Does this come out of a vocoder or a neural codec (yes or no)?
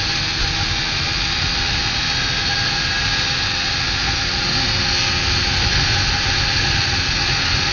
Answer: no